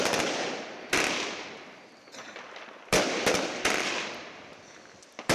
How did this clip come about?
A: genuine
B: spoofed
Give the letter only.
B